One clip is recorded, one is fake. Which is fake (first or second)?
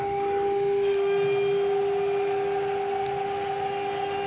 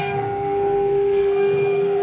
second